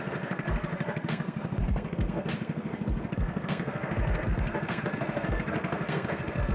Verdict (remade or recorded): remade